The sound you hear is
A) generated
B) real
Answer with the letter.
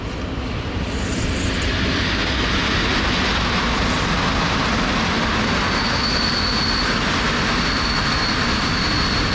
B